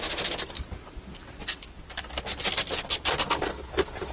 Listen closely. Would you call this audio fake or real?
real